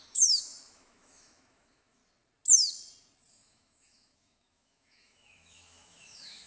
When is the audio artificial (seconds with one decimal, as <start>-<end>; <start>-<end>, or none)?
0.0-2.0; 3.3-6.5